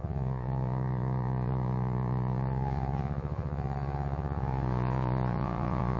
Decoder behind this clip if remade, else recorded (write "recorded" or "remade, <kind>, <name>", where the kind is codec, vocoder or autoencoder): remade, vocoder, Vocos